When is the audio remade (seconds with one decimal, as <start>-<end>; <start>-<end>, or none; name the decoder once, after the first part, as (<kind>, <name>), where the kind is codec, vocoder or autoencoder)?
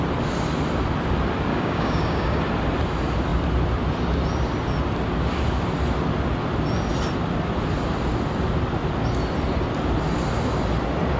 1.5-2.4 (codec, DAC)